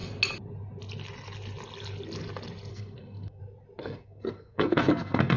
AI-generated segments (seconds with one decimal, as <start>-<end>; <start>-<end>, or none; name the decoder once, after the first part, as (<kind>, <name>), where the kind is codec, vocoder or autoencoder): 2.7-3.4 (codec, SNAC); 3.8-5.4